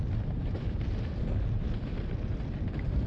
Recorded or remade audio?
recorded